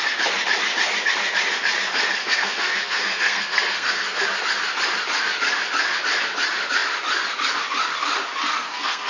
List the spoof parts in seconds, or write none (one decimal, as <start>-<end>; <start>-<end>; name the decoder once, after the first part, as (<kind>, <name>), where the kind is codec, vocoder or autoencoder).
2.2-4.2 (codec, SNAC); 8.4-9.1